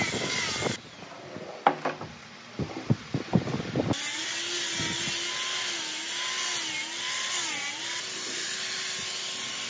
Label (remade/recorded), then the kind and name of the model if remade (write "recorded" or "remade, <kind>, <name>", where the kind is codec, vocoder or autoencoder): recorded